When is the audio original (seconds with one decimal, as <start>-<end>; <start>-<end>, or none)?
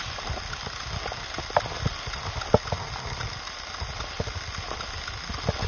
0.0-5.7